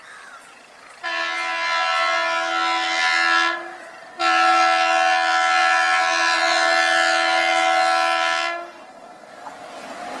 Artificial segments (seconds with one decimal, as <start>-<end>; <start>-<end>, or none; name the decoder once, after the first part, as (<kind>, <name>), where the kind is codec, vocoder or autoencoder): none